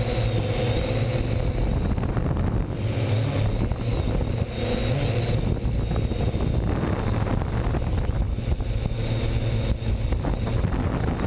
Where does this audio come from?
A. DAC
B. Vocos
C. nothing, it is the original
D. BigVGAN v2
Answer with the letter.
C